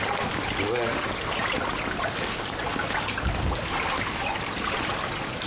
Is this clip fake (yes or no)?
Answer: no